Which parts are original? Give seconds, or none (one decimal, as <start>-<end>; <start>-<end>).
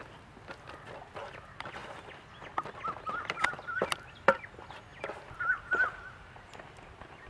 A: 0.0-7.3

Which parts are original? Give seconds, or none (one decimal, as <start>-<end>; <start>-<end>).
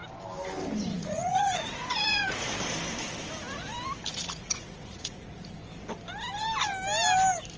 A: 0.0-0.9; 2.5-4.1; 5.5-7.6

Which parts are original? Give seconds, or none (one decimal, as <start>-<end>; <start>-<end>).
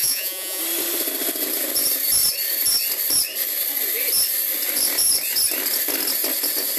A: 0.6-6.8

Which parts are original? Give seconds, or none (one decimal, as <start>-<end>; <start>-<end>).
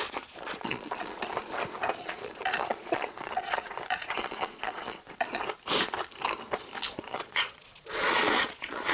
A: 1.3-2.0; 5.4-6.9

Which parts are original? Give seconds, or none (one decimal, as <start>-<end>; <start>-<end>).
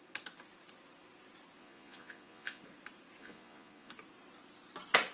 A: 0.0-1.6; 2.6-3.2; 3.9-5.1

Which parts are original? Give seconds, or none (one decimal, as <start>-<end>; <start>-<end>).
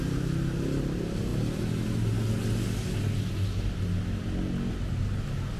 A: 0.0-5.6